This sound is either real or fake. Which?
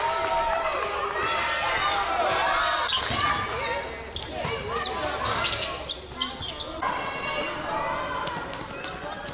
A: real